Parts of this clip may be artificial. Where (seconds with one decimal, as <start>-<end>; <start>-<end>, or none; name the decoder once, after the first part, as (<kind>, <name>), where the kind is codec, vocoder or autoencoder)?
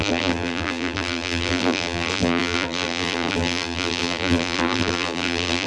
0.0-5.7 (vocoder, BigVGAN v2)